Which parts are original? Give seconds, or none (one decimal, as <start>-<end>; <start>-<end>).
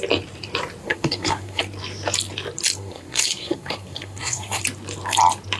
0.0-0.8; 1.6-2.8; 4.6-5.6